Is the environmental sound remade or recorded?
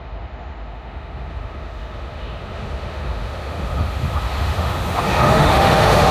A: remade